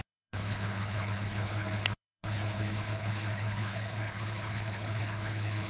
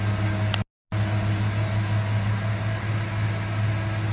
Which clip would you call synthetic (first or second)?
first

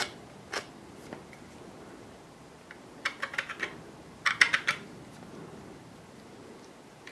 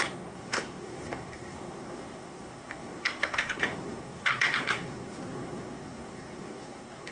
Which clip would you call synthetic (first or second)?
second